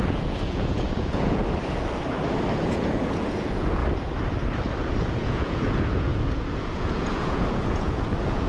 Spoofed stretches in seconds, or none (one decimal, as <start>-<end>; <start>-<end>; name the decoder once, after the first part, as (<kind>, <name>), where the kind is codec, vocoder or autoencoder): 0.0-1.4 (vocoder, Vocos); 2.6-3.8; 5.0-8.5